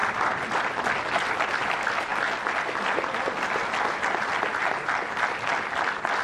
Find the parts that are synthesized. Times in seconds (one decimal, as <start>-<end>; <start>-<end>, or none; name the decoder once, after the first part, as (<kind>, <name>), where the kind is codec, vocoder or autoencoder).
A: none